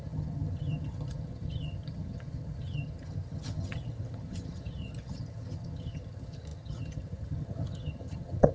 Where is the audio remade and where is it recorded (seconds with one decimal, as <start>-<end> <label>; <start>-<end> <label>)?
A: 0.0-8.5 remade